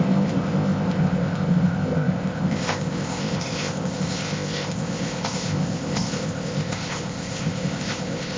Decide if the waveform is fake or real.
fake